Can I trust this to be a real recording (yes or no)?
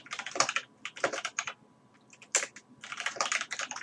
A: yes